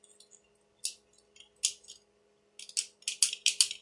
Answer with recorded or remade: recorded